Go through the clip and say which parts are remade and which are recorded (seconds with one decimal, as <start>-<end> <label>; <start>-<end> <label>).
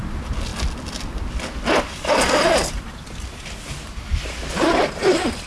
0.0-5.5 recorded